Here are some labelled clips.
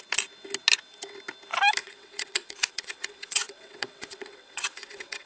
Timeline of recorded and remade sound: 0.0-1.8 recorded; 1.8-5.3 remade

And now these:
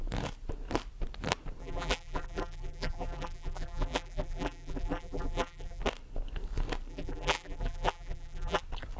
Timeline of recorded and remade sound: 0.0-1.6 recorded; 1.6-5.8 remade; 5.8-6.9 recorded; 6.9-8.6 remade; 8.6-9.0 recorded

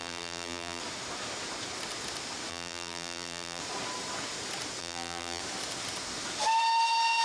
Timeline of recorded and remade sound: 0.0-0.8 remade; 0.8-2.5 recorded; 2.5-3.6 remade; 3.6-4.8 recorded; 4.8-5.4 remade; 5.4-7.2 recorded

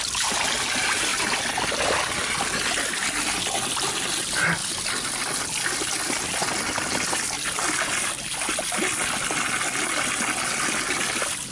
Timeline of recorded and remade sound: 0.0-11.5 recorded

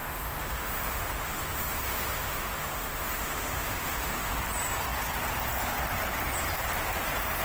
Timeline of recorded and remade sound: 0.0-4.4 remade; 4.4-7.4 recorded

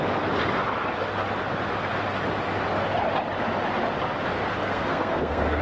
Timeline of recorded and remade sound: 0.0-4.6 recorded; 4.6-5.6 remade

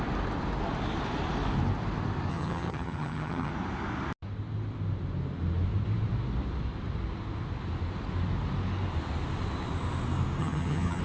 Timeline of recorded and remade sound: 0.0-2.3 recorded; 2.3-3.5 remade; 3.5-10.4 recorded; 10.4-11.0 remade